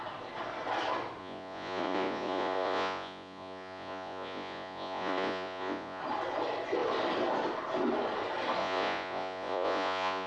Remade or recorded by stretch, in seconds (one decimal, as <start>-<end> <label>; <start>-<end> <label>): 0.0-1.2 recorded; 1.2-6.0 remade; 6.0-8.6 recorded; 8.6-10.3 remade